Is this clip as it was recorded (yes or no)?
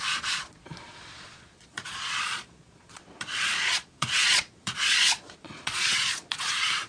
no